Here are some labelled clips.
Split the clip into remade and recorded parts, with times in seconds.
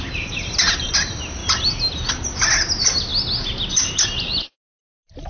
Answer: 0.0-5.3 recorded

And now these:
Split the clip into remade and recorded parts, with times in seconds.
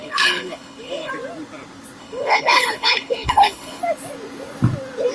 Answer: 0.0-1.1 remade; 1.1-2.0 recorded; 2.0-3.8 remade; 3.8-5.1 recorded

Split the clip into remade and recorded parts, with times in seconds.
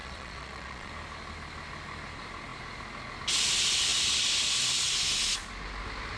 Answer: 0.0-0.9 remade; 0.9-6.2 recorded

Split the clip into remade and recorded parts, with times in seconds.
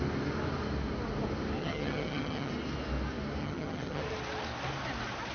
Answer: 0.0-1.6 recorded; 1.6-2.5 remade; 2.5-3.4 recorded; 3.4-4.0 remade; 4.0-5.3 recorded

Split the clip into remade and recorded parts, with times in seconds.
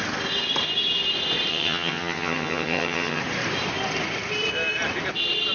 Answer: 0.0-1.5 recorded; 1.5-3.2 remade; 3.2-5.5 recorded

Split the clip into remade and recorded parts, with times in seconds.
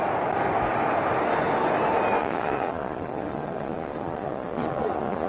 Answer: 0.0-2.2 recorded; 2.2-5.3 remade